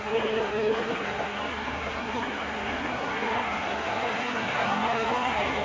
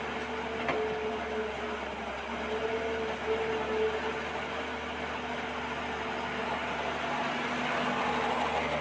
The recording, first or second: second